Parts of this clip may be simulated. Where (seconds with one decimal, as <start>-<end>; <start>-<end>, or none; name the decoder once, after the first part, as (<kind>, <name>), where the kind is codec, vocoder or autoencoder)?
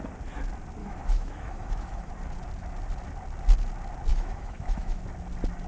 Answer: 0.8-2.1 (autoencoder, DAC-VAE); 4.1-5.0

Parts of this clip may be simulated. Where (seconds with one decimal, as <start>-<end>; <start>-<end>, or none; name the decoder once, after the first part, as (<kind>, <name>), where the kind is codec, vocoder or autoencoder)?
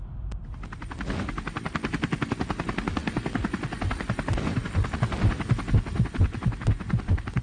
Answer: none